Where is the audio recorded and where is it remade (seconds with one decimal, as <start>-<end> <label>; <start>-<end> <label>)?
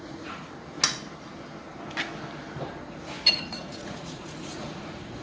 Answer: 0.0-0.4 remade; 0.4-3.3 recorded; 3.3-5.2 remade